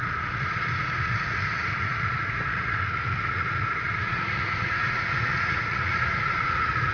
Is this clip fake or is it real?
fake